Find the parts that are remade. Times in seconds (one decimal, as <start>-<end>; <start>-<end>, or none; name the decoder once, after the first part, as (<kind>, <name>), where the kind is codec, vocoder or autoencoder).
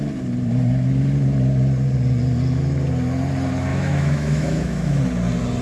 3.7-5.0 (autoencoder, DAC-VAE)